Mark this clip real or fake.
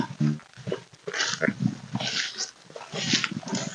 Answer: real